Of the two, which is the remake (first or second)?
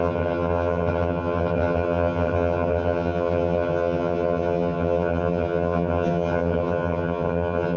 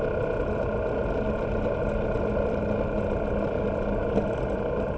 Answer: first